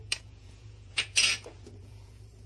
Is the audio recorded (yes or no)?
no